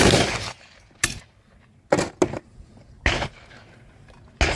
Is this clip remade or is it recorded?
recorded